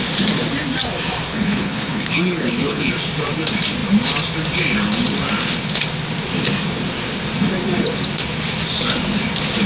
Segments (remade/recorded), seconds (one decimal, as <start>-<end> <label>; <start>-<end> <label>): 0.0-1.3 recorded; 1.3-2.9 remade; 2.9-9.7 recorded